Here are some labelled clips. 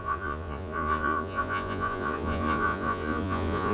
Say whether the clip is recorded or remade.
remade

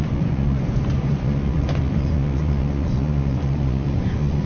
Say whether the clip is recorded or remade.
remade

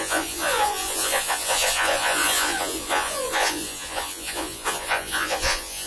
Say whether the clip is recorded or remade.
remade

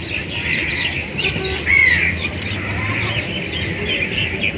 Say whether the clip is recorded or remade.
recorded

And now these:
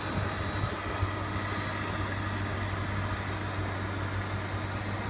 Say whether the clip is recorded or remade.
recorded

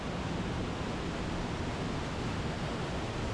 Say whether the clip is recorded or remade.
recorded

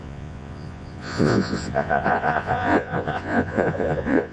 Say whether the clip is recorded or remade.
remade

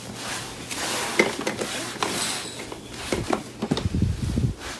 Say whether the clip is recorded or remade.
recorded